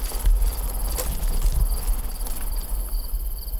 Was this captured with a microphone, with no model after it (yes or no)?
yes